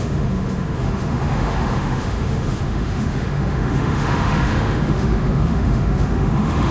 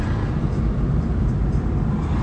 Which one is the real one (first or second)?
second